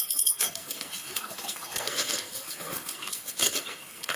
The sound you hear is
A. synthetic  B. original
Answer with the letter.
A